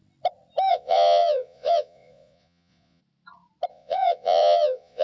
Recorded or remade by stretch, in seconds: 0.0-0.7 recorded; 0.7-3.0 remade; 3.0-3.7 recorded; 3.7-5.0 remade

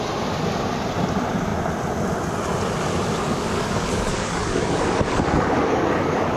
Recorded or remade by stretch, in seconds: 0.0-3.2 recorded; 3.2-6.4 remade

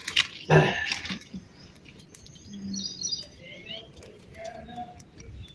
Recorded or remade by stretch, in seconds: 0.0-5.5 recorded